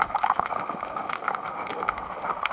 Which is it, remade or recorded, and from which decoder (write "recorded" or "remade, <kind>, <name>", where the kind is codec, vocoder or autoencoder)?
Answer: remade, autoencoder, DAC-VAE